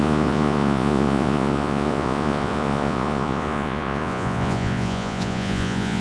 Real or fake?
fake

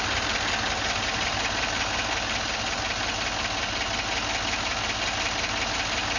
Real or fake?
real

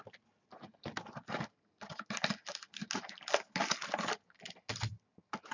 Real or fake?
real